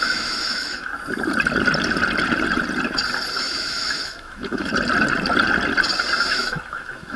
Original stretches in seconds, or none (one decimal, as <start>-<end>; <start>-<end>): 0.9-3.4; 4.7-6.2